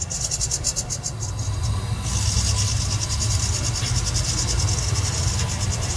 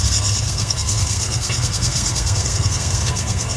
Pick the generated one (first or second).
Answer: second